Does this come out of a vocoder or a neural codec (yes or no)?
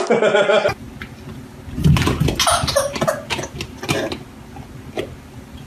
no